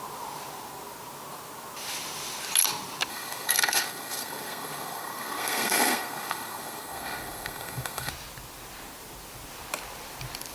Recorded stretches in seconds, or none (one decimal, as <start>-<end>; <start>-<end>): 0.0-3.1; 8.1-10.5